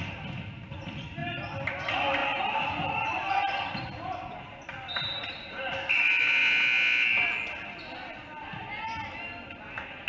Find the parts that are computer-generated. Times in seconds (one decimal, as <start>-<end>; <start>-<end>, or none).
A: none